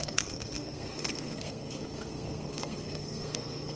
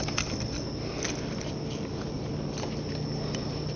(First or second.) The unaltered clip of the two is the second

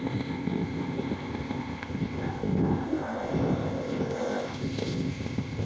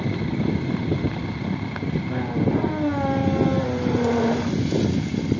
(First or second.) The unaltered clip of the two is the second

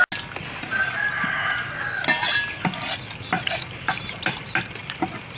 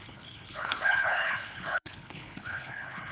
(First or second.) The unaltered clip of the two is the first